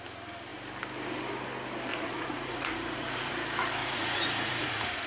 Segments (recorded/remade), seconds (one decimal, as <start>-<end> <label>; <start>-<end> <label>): 0.0-1.9 recorded; 1.9-3.3 remade; 3.3-3.8 recorded; 3.8-5.1 remade